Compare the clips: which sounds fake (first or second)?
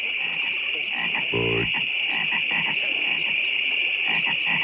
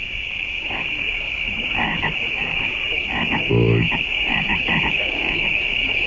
second